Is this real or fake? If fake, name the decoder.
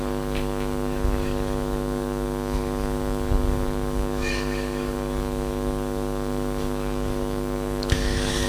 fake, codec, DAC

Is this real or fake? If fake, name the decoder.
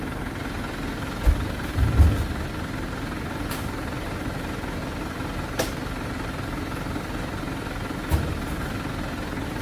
real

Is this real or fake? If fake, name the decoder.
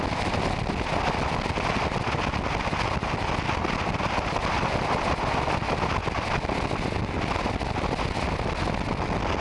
real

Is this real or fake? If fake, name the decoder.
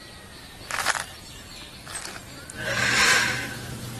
real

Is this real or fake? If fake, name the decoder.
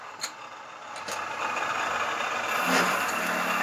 real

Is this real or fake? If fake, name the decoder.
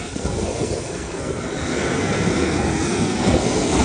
fake, codec, SNAC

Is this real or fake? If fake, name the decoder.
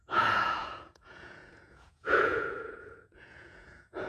fake, vocoder, Vocos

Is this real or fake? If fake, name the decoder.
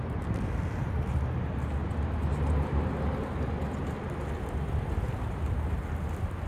real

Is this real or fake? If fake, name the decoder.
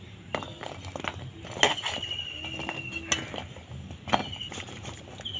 real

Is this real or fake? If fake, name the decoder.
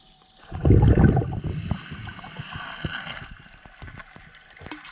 real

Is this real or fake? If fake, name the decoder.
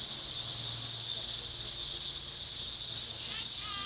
real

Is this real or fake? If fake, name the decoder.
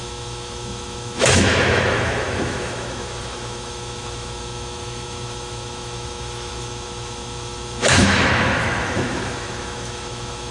fake, autoencoder, DAC-VAE